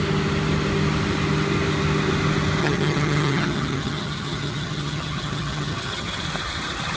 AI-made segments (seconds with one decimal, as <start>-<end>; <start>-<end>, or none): 2.6-6.2